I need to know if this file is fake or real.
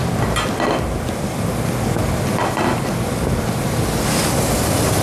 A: real